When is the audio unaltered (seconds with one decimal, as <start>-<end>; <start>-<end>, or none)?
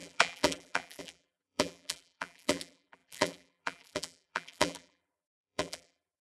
none